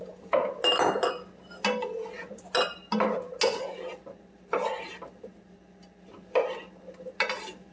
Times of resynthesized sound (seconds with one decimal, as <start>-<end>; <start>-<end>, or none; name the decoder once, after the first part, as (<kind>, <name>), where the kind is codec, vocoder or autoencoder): none